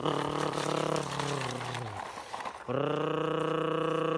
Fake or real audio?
real